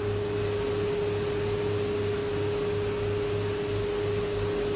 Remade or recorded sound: recorded